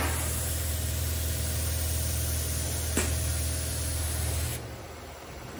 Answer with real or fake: real